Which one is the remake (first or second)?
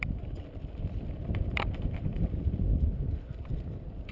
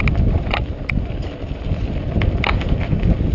first